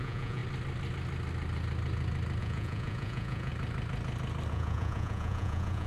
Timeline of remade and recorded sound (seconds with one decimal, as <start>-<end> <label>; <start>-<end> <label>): 0.0-0.4 remade; 0.4-2.4 recorded; 2.4-3.5 remade; 3.5-4.5 recorded; 4.5-5.9 remade